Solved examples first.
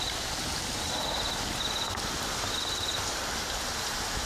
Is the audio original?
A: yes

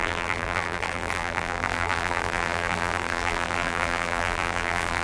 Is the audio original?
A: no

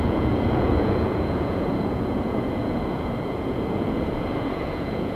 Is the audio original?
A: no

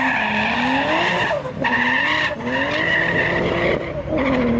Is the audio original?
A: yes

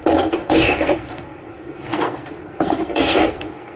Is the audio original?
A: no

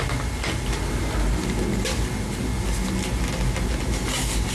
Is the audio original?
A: yes